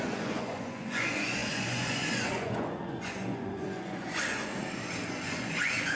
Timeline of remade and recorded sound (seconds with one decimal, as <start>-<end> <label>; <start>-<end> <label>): 0.0-4.5 remade; 4.5-5.1 recorded; 5.1-6.0 remade